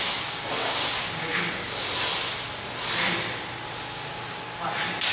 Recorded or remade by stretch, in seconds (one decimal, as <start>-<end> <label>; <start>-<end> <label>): 0.0-0.6 recorded; 0.6-1.5 remade; 1.5-5.1 recorded

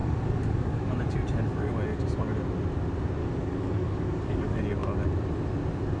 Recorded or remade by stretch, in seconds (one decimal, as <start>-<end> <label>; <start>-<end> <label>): 0.0-0.9 remade; 0.9-3.2 recorded; 3.2-4.6 remade; 4.6-6.0 recorded

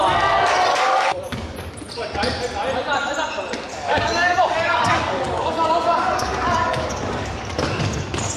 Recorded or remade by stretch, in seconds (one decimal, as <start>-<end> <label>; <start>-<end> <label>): 0.0-0.7 recorded; 0.7-1.7 remade; 1.7-3.7 recorded; 3.7-7.4 remade; 7.4-8.4 recorded

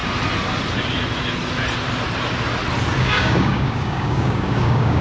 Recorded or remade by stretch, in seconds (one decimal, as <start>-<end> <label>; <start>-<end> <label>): 0.0-3.0 recorded; 3.0-5.0 remade

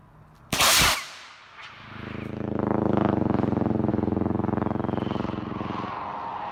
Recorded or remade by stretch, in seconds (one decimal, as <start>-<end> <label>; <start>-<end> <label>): 0.0-6.5 recorded

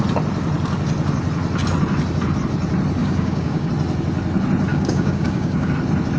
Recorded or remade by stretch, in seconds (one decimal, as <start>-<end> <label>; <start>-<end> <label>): 0.0-3.0 recorded; 3.0-3.7 remade; 3.7-4.7 recorded; 4.7-5.7 remade; 5.7-6.2 recorded

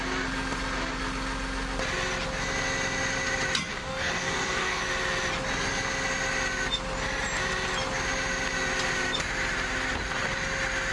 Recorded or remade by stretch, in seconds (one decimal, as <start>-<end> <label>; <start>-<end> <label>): 0.0-3.7 recorded; 3.7-4.8 remade; 4.8-10.9 recorded